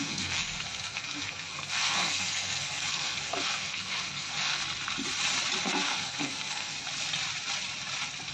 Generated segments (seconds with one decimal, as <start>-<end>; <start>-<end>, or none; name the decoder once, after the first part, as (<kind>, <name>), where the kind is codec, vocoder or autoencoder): 0.0-4.6 (codec, SNAC); 5.6-6.7